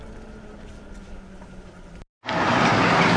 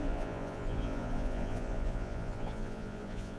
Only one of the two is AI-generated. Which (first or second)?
second